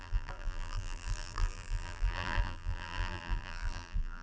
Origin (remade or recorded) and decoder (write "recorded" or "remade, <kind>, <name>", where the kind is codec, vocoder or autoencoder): remade, vocoder, BigVGAN v2